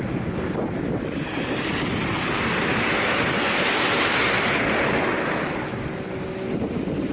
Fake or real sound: real